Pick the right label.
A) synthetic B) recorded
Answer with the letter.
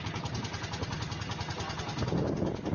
B